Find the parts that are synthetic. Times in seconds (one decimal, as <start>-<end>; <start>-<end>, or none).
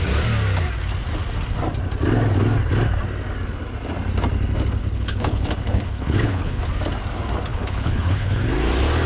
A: 4.8-6.6; 7.5-8.4